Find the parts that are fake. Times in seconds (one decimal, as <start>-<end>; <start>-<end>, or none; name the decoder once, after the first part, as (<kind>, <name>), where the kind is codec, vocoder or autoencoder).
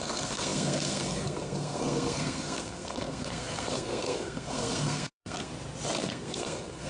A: 0.0-5.5 (codec, SNAC); 6.0-6.9